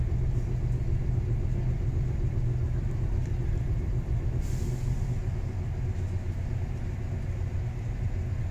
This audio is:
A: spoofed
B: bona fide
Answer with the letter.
B